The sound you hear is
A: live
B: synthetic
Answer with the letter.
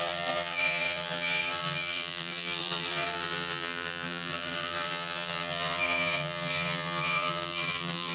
B